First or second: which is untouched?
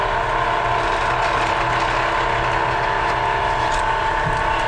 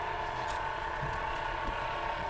first